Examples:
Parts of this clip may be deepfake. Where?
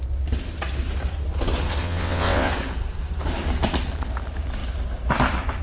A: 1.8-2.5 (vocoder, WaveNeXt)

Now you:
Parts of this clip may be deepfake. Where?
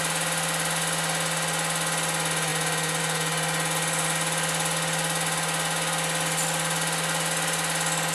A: none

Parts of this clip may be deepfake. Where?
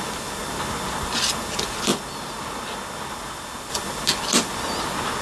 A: none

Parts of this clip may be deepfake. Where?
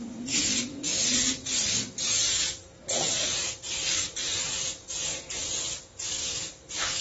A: none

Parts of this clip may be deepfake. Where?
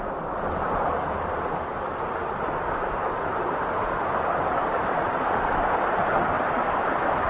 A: 0.0-3.0 (vocoder, BigVGAN v2); 4.8-7.3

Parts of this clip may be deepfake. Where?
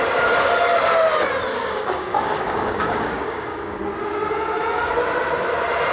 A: 1.5-3.8 (codec, DAC)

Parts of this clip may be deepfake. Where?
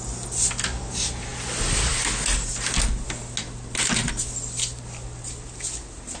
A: none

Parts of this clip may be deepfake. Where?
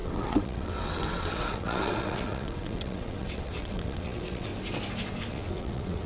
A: 0.0-4.5 (vocoder, WaveNeXt); 5.3-6.1